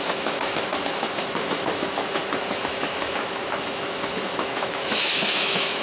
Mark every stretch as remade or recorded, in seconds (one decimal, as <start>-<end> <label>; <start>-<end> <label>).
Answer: 0.0-5.8 remade